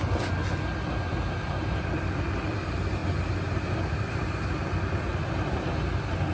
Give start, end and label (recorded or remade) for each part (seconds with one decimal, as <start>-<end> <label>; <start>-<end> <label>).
0.0-1.1 recorded; 1.1-2.5 remade; 2.5-6.3 recorded